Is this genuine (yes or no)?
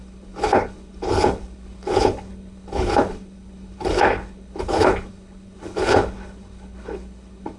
no